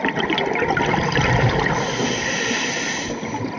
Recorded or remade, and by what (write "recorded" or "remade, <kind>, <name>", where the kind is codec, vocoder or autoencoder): recorded